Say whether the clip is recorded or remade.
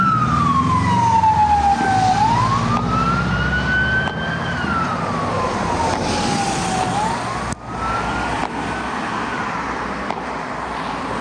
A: recorded